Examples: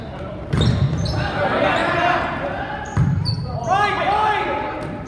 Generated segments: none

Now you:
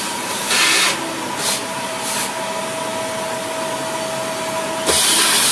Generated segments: none

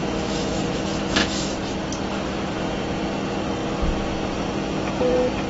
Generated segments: 0.0-0.6

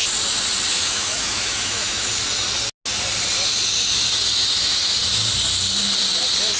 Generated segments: 0.7-2.1

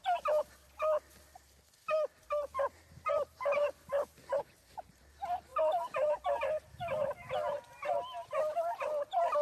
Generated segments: none

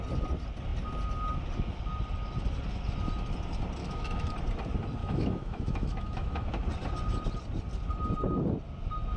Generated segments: 3.8-4.3; 5.0-6.6